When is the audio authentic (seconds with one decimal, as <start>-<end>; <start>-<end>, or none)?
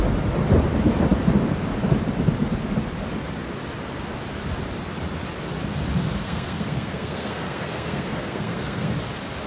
0.0-6.2; 8.9-9.5